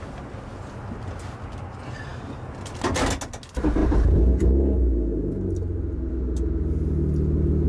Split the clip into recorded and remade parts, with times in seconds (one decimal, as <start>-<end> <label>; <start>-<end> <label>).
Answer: 0.0-7.7 recorded